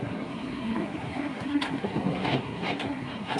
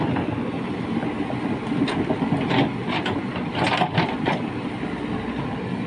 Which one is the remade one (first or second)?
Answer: first